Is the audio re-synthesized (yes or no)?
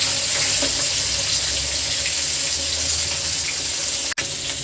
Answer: no